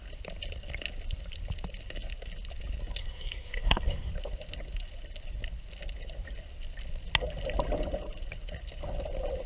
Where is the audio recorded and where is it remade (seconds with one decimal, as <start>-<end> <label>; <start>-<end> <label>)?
0.0-3.0 recorded; 3.0-4.1 remade; 4.1-9.5 recorded